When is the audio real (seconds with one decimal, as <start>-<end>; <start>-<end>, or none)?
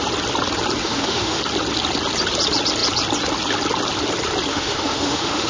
0.0-0.8; 1.4-4.5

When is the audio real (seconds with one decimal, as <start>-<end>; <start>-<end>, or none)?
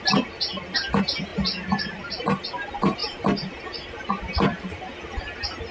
0.0-5.7